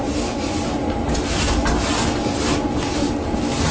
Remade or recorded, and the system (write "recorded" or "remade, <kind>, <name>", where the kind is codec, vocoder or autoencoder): recorded